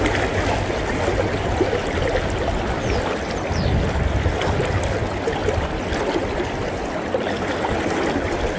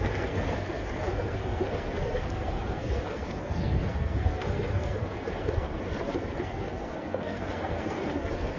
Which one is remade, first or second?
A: second